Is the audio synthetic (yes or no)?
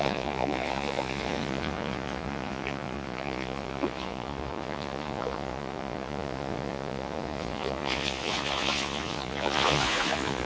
yes